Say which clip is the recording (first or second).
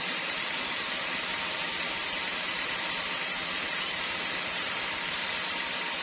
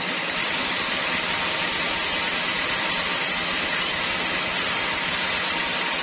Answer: second